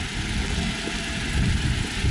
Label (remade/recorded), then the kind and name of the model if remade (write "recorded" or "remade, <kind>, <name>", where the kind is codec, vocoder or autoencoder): recorded